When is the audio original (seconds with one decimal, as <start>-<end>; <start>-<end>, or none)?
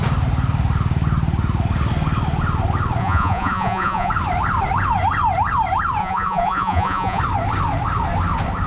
0.0-3.0; 4.1-6.0; 7.2-8.7